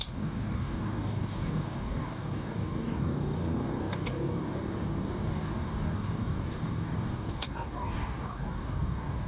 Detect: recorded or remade remade